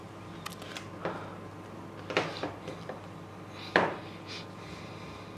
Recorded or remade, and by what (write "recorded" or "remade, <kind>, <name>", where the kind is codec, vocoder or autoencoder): recorded